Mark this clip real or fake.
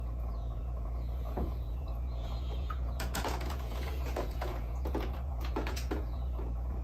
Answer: fake